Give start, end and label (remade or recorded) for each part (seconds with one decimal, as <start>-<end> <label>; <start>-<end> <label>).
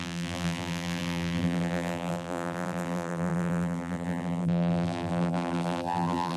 0.0-6.4 remade